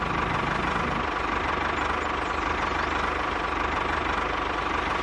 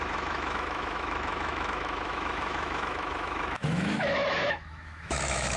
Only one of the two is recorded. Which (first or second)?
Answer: first